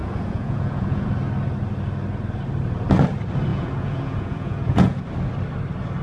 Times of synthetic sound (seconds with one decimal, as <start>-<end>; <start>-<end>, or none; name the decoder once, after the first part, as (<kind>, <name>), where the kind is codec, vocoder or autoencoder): 0.0-1.1 (vocoder, Vocos); 3.5-5.0